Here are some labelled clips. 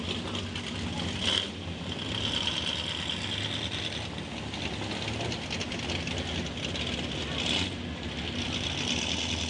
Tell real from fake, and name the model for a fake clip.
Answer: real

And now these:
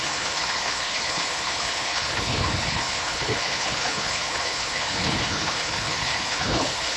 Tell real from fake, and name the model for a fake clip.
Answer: fake, codec, HILCodec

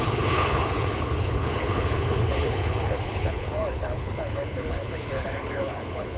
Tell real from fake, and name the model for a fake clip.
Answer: fake, codec, HILCodec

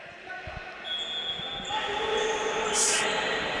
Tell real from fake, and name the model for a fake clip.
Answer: real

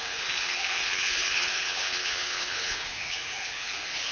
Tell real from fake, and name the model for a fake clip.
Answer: fake, codec, HILCodec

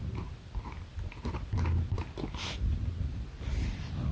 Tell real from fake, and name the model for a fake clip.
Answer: real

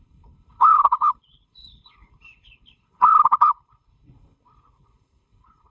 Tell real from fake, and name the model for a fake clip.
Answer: fake, codec, HILCodec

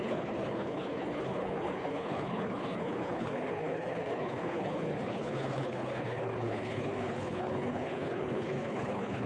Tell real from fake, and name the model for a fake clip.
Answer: fake, codec, HILCodec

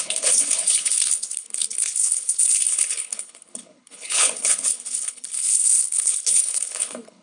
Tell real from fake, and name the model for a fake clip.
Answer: fake, codec, HILCodec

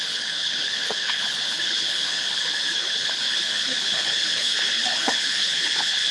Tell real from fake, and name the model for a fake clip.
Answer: fake, codec, HILCodec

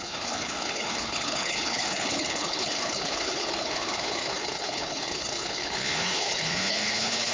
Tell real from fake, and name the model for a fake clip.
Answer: fake, codec, HILCodec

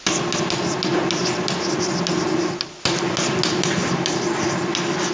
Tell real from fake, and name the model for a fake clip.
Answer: real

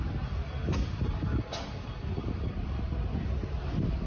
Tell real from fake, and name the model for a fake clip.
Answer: real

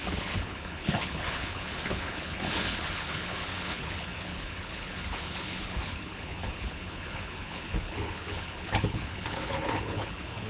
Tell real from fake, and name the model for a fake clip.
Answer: fake, codec, HILCodec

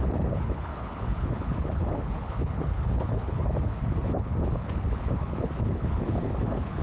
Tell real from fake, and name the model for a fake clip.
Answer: fake, codec, HILCodec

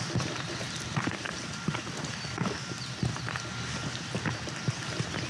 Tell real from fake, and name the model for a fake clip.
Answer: real